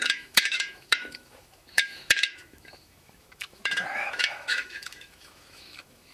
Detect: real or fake fake